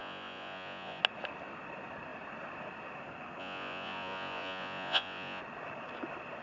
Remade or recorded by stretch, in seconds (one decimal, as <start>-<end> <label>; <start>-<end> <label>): 0.0-1.0 remade; 1.0-3.4 recorded; 3.4-5.4 remade; 5.4-6.4 recorded